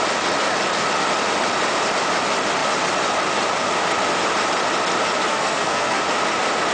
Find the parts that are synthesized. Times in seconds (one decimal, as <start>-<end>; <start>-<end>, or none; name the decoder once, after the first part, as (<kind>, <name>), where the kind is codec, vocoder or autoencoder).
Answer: 5.3-6.0 (codec, SNAC)